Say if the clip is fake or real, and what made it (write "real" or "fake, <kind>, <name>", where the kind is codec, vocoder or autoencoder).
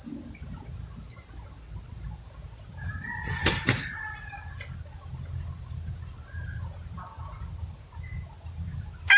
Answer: real